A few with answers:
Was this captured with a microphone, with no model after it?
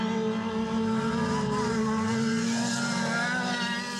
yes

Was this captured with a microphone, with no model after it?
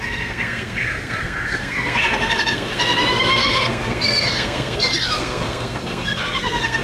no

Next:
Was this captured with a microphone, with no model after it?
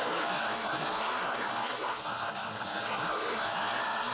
no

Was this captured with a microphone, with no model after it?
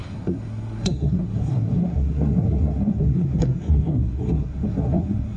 no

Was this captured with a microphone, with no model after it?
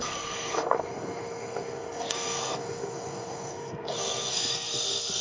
no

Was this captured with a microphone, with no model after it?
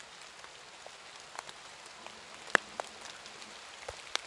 yes